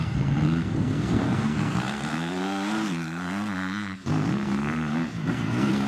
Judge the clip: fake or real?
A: fake